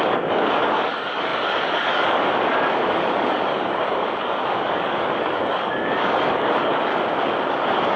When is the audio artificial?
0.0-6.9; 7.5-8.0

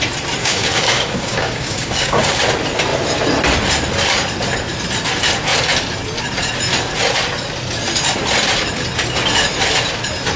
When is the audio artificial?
0.4-2.4

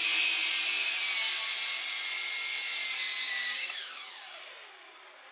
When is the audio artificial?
3.4-4.4

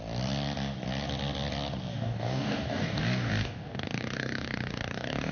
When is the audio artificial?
1.9-5.3

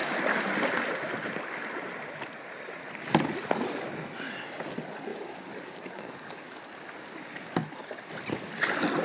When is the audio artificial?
5.1-6.6

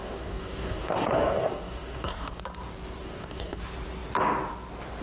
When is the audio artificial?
0.0-2.4; 3.0-3.6